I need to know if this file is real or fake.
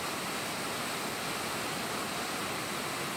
real